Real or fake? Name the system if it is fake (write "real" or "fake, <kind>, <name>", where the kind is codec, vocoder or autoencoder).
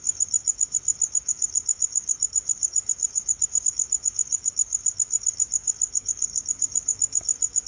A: fake, codec, DAC